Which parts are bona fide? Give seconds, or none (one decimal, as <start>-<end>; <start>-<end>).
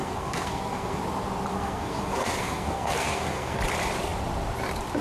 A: 1.0-1.5; 3.6-5.0